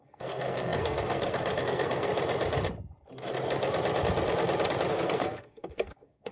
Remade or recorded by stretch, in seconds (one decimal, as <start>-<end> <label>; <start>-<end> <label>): 0.0-2.1 remade; 2.1-4.9 recorded; 4.9-6.3 remade